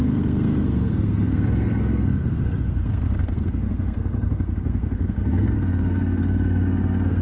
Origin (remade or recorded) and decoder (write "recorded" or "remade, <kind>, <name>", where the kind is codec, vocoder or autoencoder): remade, codec, SNAC